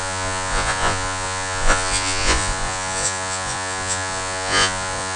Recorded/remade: remade